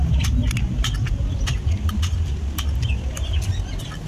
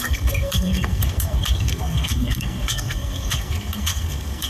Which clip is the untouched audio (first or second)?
first